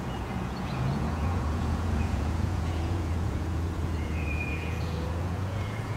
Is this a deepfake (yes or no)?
yes